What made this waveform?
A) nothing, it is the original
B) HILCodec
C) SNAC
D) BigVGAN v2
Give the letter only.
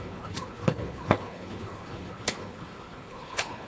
B